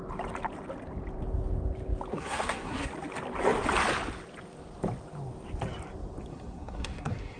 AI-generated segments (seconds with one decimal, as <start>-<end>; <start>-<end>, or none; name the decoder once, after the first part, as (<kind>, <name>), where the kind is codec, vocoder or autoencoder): 2.1-2.9 (codec, SNAC); 6.3-7.4